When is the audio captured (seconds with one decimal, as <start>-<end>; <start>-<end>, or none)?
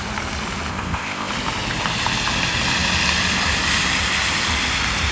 0.0-0.7; 1.3-5.1